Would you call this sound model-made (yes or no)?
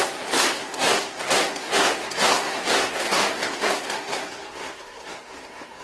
yes